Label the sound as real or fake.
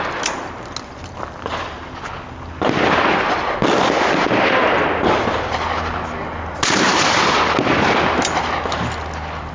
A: real